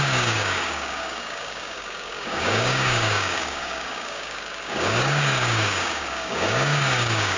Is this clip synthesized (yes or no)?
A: yes